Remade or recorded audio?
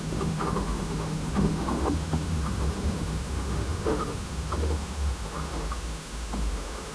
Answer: remade